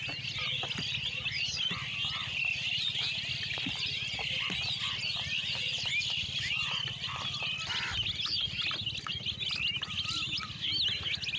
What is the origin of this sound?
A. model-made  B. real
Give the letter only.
B